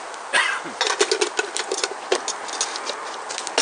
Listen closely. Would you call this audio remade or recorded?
recorded